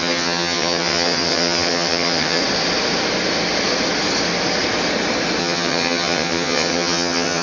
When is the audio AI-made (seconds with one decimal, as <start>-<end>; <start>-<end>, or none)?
0.0-2.4; 5.4-7.4

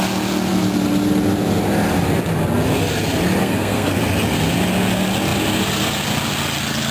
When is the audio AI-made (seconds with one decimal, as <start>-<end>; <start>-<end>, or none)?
3.4-4.0

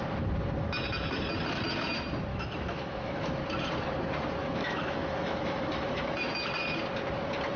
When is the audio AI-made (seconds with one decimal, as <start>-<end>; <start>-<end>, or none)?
2.3-3.3; 4.4-6.3